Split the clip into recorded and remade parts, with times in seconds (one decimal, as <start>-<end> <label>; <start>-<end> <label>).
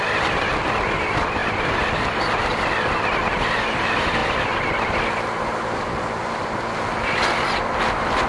0.0-8.3 recorded